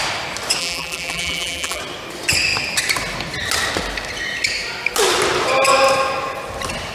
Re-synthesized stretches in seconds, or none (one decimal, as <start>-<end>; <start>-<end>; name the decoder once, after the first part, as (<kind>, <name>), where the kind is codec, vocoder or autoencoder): 0.6-1.8 (vocoder, BigVGAN v2)